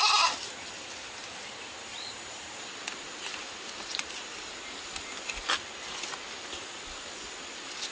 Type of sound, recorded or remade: recorded